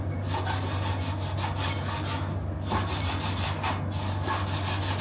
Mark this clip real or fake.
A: real